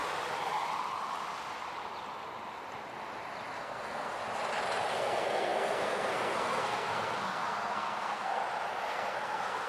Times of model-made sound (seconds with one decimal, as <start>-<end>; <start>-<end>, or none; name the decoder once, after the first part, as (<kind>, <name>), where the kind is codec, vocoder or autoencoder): 3.6-4.2 (codec, SNAC); 4.9-8.4; 8.9-9.7